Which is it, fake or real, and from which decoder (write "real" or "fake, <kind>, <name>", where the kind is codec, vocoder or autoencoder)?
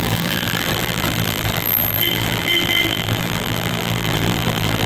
fake, vocoder, BigVGAN v2